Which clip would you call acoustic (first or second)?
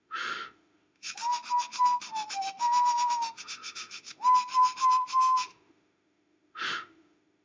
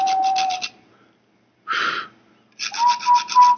second